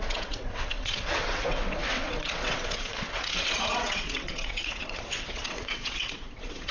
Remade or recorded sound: remade